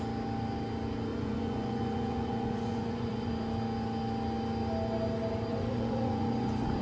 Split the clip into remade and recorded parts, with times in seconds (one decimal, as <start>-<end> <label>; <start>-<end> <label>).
0.0-1.1 recorded; 1.1-3.3 remade; 3.3-5.5 recorded; 5.5-6.8 remade